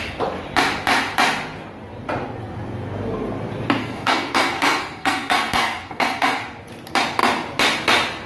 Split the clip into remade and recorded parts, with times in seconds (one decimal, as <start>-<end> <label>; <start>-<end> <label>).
0.0-3.8 recorded; 3.8-6.4 remade; 6.4-8.3 recorded